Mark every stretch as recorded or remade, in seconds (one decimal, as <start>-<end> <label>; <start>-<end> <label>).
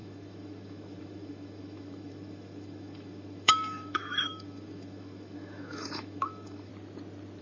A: 0.0-6.7 remade; 6.7-7.4 recorded